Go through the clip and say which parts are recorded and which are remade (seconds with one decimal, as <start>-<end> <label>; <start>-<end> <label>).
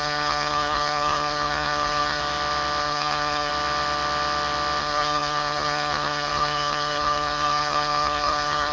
0.0-2.2 remade; 2.2-2.8 recorded; 2.8-3.5 remade; 3.5-4.8 recorded; 4.8-8.7 remade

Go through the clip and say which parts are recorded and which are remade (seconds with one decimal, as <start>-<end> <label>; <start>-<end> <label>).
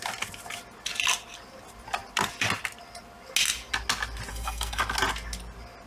0.0-4.3 recorded; 4.3-4.8 remade; 4.8-5.9 recorded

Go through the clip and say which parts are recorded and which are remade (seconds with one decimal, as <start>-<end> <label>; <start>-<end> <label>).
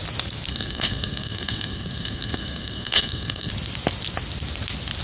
0.0-0.5 recorded; 0.5-3.5 remade; 3.5-5.0 recorded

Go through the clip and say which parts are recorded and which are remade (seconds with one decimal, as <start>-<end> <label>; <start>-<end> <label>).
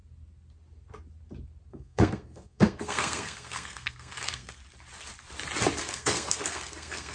0.0-1.7 recorded; 1.7-4.6 remade; 4.6-5.8 recorded; 5.8-7.1 remade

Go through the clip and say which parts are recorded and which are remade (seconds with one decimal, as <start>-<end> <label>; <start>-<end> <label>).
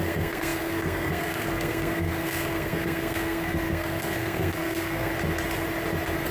0.0-5.1 remade; 5.1-6.3 recorded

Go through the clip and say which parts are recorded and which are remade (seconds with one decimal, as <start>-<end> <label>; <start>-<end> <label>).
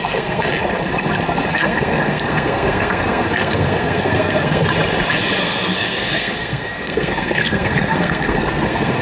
0.0-0.5 remade; 0.5-1.5 recorded; 1.5-4.7 remade; 4.7-5.4 recorded; 5.4-9.0 remade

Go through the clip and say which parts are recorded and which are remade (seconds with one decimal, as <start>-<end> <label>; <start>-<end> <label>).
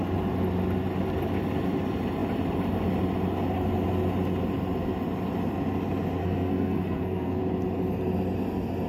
0.0-6.2 recorded; 6.2-7.4 remade; 7.4-8.9 recorded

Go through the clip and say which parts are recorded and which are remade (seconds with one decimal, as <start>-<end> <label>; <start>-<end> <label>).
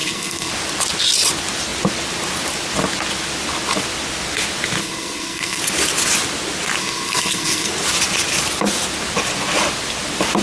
0.0-0.5 remade; 0.5-4.8 recorded; 4.8-5.6 remade; 5.6-6.8 recorded; 6.8-7.7 remade; 7.7-10.4 recorded